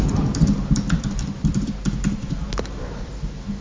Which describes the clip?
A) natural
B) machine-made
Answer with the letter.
A